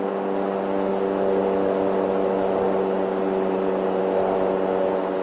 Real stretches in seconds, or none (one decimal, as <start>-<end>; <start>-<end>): 0.0-5.2